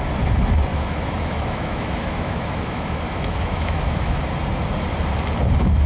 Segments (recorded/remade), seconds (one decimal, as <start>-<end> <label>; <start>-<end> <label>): 0.0-0.7 recorded; 0.7-4.2 remade; 4.2-5.9 recorded